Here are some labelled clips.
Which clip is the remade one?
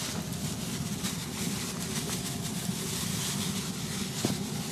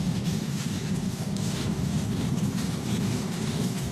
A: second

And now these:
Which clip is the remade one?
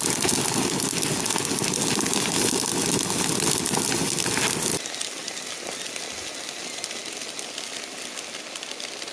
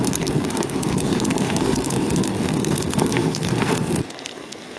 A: second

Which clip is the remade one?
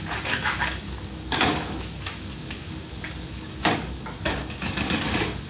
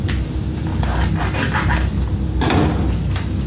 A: first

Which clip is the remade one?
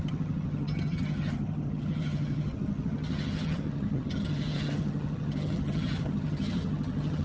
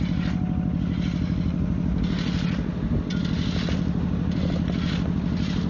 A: first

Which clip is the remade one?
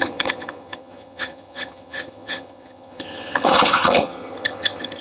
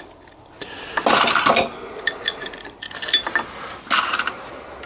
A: first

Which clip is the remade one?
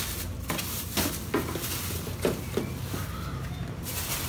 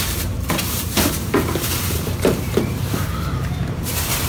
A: second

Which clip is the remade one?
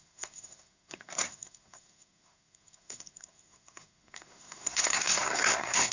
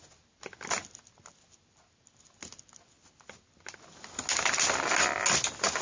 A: first